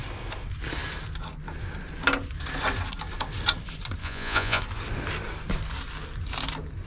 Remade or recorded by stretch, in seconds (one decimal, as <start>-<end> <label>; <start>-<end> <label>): 0.0-4.0 recorded; 4.0-4.6 remade; 4.6-6.9 recorded